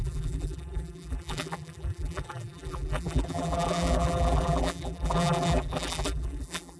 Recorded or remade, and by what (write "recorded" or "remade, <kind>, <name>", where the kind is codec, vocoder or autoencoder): remade, vocoder, BigVGAN v2